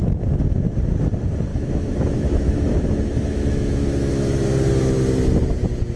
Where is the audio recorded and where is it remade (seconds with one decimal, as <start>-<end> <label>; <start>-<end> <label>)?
0.0-1.5 recorded; 1.5-4.1 remade; 4.1-6.0 recorded